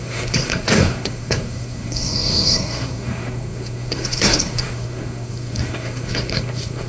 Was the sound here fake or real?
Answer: fake